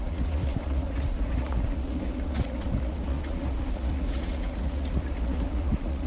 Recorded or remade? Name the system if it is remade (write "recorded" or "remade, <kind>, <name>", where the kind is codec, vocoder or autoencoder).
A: remade, vocoder, Vocos